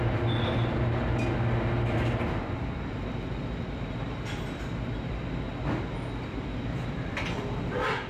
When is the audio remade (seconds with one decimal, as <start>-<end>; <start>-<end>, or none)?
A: 6.3-7.6